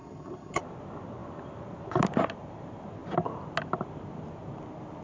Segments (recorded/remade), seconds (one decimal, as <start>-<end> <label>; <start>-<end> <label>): 0.0-0.6 remade; 0.6-5.0 recorded